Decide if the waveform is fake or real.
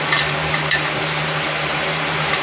fake